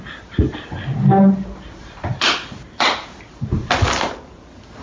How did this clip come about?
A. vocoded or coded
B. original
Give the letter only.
B